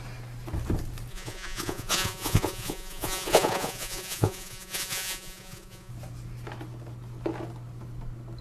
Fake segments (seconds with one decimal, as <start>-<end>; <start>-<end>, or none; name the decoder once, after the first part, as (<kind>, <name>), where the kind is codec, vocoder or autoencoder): 1.1-5.9 (vocoder, Vocos)